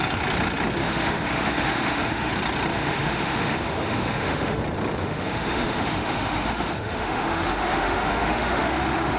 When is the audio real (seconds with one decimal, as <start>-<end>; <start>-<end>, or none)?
0.0-0.8; 2.3-2.7; 4.6-5.0